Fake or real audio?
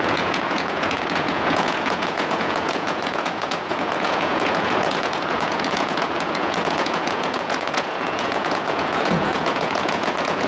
fake